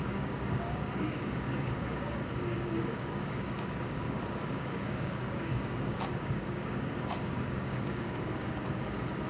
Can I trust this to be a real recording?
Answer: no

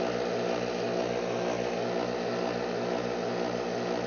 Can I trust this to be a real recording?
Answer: yes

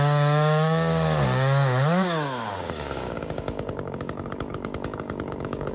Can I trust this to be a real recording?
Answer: no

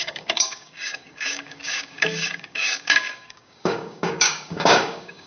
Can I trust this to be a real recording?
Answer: no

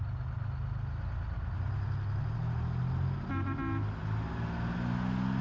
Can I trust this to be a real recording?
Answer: yes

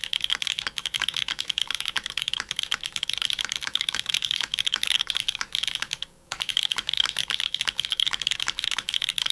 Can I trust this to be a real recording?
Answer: no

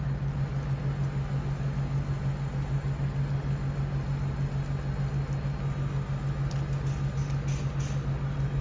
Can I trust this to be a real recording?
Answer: yes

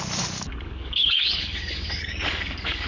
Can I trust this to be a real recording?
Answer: no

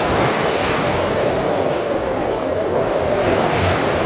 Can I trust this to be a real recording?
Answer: no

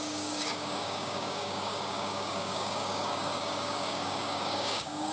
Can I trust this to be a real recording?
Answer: no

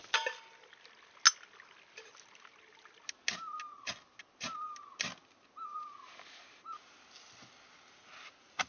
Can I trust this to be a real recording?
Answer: yes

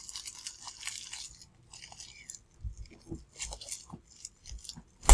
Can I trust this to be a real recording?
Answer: yes